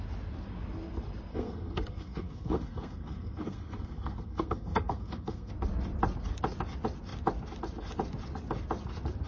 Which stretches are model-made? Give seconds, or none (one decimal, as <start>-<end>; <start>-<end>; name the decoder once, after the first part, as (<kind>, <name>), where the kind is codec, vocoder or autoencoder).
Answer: 1.3-5.5 (codec, SNAC)